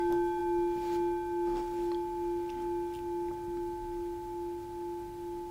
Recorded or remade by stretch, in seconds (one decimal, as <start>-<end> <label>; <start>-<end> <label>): 0.0-5.5 recorded